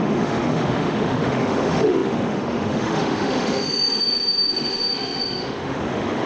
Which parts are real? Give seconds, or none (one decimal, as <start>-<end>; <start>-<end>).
none